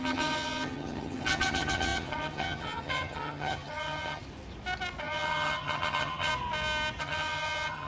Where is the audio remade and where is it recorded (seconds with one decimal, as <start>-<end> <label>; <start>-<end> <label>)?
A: 0.0-4.2 remade; 4.2-5.0 recorded; 5.0-6.3 remade; 6.3-7.0 recorded; 7.0-7.9 remade